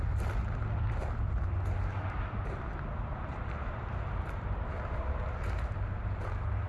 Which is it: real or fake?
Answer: real